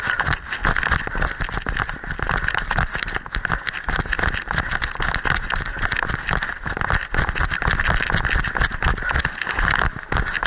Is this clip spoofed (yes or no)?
no